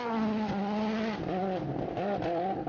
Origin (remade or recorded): recorded